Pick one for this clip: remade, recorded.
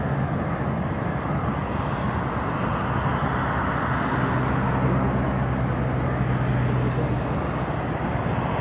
recorded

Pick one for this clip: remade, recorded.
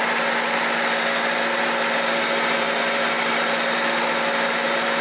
recorded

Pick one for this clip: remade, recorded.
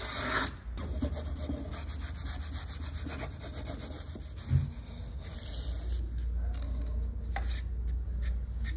recorded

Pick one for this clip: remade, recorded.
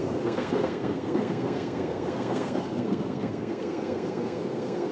remade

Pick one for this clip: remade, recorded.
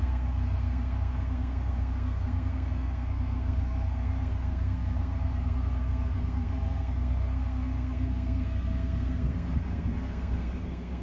remade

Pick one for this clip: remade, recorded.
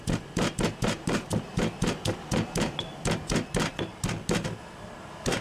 recorded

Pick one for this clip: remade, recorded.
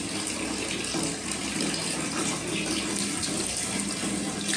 recorded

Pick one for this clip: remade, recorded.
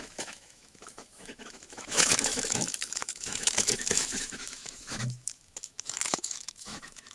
remade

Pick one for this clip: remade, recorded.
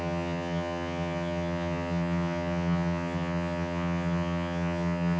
remade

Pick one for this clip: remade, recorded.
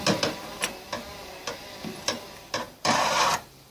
remade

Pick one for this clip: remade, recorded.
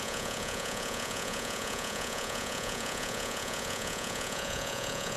remade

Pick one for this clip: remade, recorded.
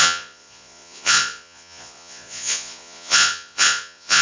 remade